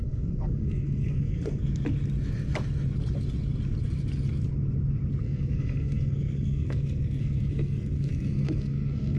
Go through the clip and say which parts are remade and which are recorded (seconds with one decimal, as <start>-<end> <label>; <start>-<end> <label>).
0.0-1.6 remade; 1.6-5.2 recorded; 5.2-9.2 remade